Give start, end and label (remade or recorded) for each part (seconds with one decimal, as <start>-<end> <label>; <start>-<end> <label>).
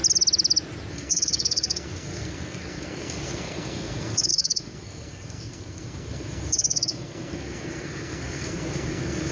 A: 0.0-0.9 recorded; 0.9-9.3 remade